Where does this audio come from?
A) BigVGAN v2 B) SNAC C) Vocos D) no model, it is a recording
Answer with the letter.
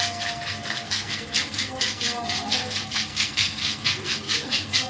B